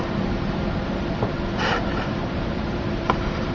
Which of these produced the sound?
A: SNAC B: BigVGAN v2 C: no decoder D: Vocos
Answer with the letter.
B